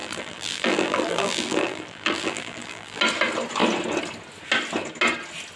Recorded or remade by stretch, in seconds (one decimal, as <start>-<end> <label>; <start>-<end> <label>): 0.0-3.0 remade; 3.0-5.6 recorded